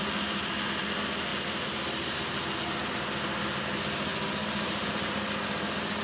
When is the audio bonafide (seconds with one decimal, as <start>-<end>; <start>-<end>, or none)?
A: 0.0-6.0